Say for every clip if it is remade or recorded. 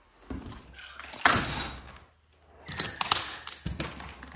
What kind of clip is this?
recorded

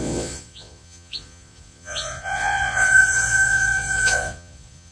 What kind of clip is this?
remade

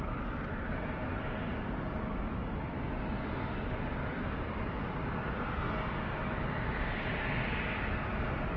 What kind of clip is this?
recorded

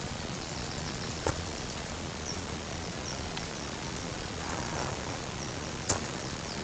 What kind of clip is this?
remade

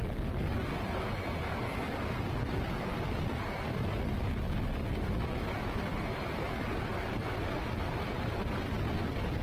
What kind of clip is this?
recorded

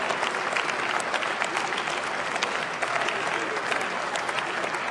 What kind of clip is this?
recorded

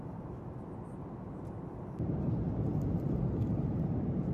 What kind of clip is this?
recorded